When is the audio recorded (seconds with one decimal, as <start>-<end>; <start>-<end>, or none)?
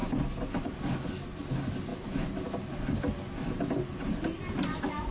0.0-5.1